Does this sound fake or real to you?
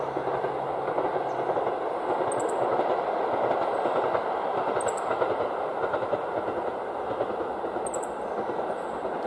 real